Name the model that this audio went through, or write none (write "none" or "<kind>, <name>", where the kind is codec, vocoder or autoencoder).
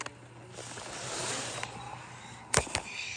none